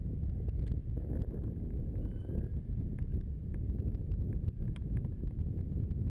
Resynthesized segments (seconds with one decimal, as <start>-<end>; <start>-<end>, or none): 3.1-4.8